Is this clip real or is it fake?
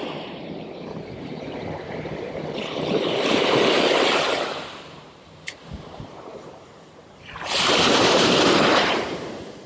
fake